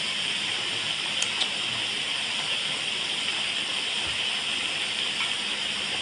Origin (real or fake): real